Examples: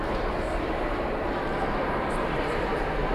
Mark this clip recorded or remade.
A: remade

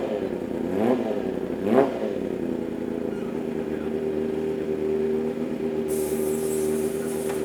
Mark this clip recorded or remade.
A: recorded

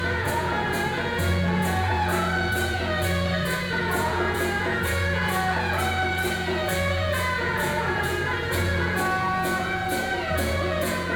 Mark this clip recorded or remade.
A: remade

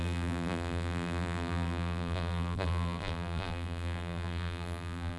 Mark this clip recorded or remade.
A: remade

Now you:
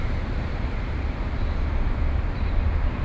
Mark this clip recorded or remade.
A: remade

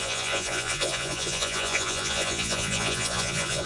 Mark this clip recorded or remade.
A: remade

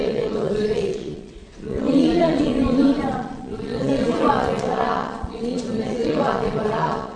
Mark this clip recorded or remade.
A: remade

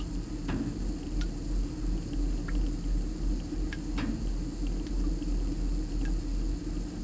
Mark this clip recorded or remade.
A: recorded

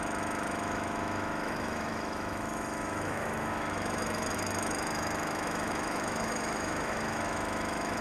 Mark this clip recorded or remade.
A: remade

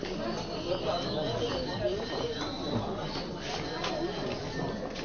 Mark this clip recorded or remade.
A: recorded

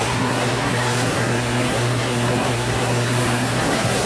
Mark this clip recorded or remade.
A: remade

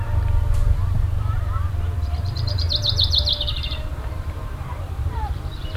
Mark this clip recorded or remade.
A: remade